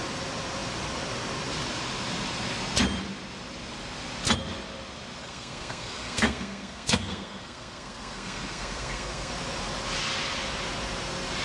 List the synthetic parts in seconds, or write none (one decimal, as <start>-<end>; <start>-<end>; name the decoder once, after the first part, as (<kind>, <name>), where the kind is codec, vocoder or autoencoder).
5.2-9.3 (codec, SNAC)